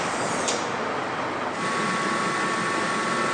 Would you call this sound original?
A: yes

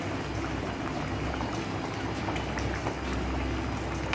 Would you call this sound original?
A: yes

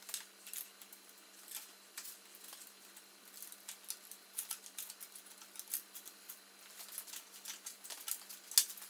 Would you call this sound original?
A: yes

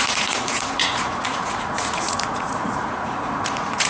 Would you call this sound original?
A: no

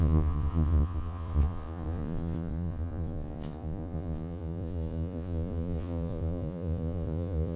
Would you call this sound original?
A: no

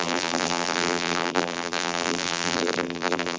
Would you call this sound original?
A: no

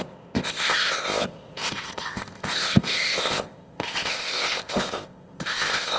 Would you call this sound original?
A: no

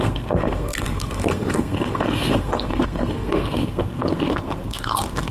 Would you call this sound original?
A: no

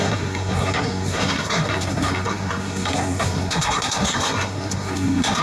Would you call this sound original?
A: no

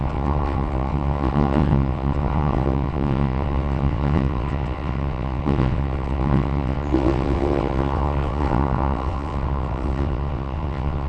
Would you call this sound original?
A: no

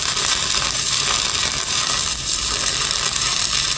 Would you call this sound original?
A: no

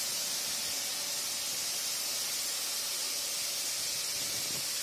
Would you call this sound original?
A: yes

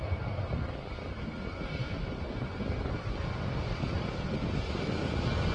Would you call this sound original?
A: yes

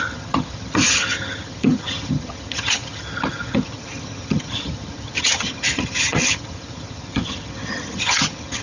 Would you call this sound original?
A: no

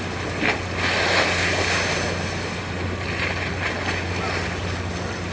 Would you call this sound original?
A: yes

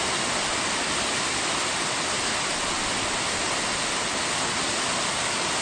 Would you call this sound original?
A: yes